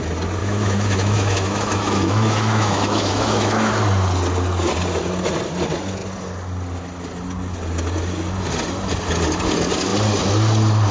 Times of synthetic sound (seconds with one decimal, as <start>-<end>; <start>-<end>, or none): 0.4-3.7